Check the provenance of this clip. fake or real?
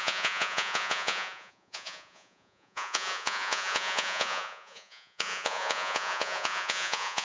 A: fake